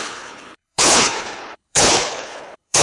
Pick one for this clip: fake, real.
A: fake